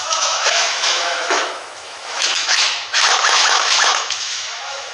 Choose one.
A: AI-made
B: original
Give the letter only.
A